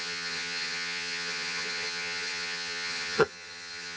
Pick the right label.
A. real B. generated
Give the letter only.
B